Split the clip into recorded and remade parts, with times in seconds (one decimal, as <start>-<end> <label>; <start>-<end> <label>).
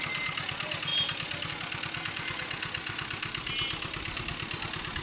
0.0-5.0 recorded